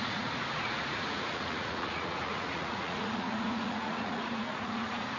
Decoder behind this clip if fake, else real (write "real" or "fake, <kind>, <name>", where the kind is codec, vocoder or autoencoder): fake, vocoder, Vocos